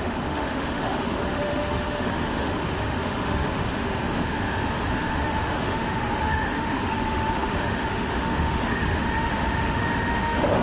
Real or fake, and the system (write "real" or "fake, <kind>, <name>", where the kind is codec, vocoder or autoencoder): fake, autoencoder, DAC-VAE